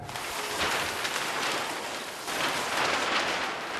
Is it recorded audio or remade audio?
recorded